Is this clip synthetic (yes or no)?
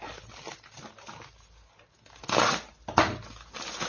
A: no